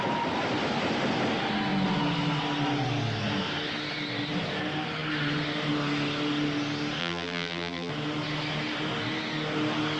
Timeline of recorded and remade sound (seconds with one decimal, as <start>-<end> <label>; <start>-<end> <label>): 0.0-7.0 recorded; 7.0-7.9 remade; 7.9-10.0 recorded